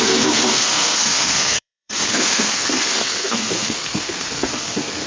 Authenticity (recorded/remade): remade